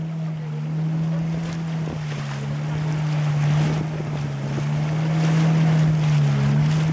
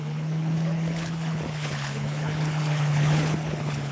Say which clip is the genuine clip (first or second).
first